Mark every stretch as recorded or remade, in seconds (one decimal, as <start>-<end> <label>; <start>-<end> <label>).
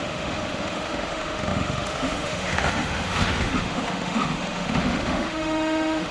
0.0-6.1 remade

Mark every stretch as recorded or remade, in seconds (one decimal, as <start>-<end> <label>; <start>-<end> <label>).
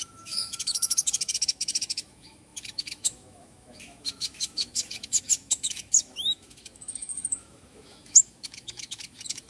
0.0-9.5 remade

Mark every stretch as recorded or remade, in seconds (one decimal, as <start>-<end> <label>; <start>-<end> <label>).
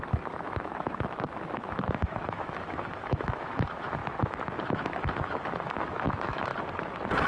0.0-4.0 remade; 4.0-4.6 recorded; 4.6-6.5 remade; 6.5-7.3 recorded